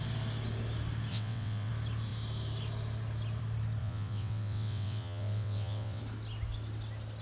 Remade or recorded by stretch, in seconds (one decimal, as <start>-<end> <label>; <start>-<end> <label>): 0.0-1.1 recorded; 1.1-1.7 remade; 1.7-3.8 recorded; 3.8-6.0 remade; 6.0-7.2 recorded